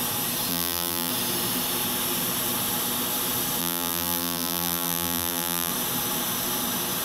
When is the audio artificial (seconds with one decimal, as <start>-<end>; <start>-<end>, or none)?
0.5-1.1; 3.6-5.7